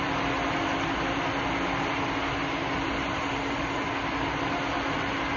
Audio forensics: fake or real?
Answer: real